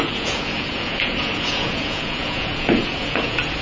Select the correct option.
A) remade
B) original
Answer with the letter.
A